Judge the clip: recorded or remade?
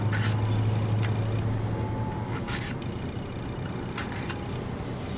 recorded